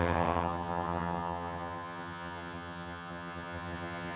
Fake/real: fake